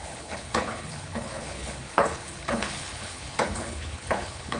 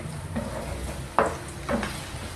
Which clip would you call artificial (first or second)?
first